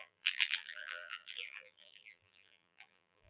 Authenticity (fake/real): fake